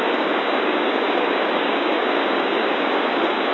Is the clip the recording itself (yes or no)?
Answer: no